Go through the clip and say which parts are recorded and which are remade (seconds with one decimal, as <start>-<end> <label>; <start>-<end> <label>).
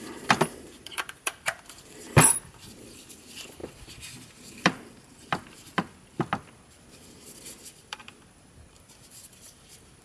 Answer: 0.0-10.0 remade